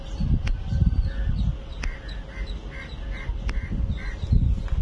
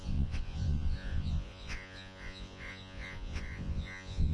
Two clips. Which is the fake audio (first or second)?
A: second